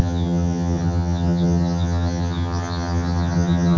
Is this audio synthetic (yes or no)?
yes